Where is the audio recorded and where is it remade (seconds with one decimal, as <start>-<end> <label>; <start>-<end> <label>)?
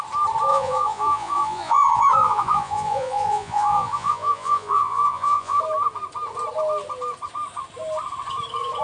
0.0-0.5 recorded; 0.5-5.6 remade; 5.6-8.8 recorded